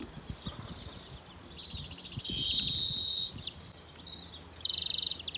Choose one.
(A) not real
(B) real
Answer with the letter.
B